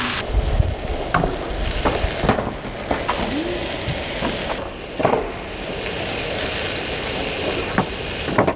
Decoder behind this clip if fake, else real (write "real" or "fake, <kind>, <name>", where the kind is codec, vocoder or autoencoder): real